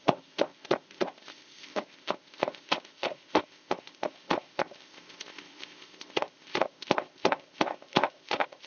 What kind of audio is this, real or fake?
fake